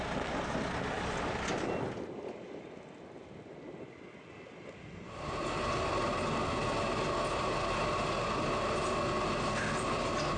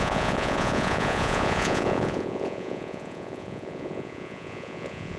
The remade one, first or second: second